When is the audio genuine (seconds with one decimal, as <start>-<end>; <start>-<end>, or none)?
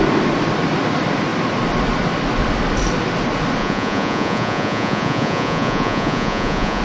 0.0-3.6